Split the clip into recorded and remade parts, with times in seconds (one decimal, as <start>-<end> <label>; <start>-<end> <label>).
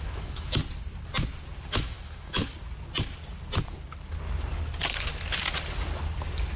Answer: 0.0-0.6 remade; 0.6-1.7 recorded; 1.7-2.4 remade; 2.4-6.6 recorded